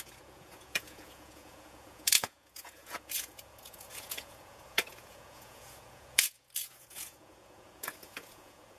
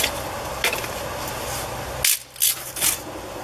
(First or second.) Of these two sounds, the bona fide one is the second